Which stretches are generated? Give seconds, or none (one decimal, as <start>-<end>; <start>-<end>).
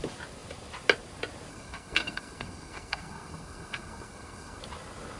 1.5-4.6